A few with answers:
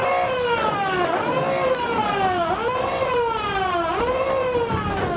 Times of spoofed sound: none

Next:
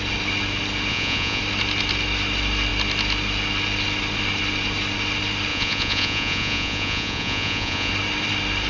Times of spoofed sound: 0.9-1.4 (vocoder, Vocos); 5.5-7.9